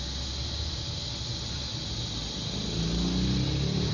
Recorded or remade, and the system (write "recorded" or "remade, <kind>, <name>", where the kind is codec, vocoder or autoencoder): recorded